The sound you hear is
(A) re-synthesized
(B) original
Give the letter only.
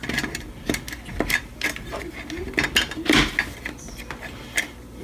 B